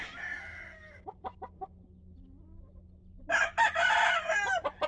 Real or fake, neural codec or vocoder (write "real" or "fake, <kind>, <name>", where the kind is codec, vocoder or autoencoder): real